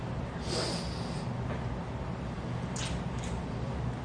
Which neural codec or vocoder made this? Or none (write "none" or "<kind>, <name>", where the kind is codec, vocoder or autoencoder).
none